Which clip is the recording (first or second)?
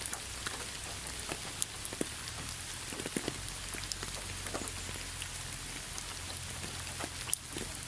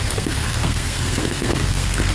first